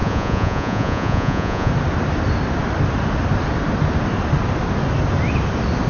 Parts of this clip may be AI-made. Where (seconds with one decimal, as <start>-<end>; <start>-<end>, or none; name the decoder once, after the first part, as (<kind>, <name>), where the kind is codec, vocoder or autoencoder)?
0.0-1.7 (vocoder, Vocos)